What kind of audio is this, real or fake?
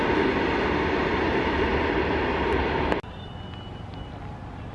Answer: real